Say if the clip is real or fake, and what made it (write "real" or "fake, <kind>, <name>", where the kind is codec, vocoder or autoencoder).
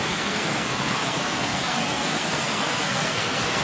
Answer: fake, codec, SNAC